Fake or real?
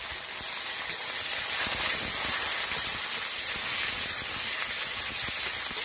real